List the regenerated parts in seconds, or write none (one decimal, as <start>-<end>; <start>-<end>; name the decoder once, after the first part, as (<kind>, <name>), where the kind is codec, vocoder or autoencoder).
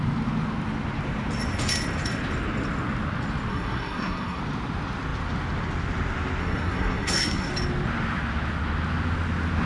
3.5-4.4 (codec, SNAC); 6.4-7.5